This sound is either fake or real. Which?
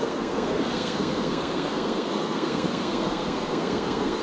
fake